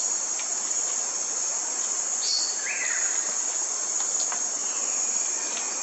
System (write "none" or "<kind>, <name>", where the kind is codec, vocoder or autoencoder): none